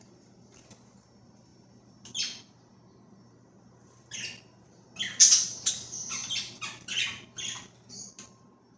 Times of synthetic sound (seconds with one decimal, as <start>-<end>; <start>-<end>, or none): none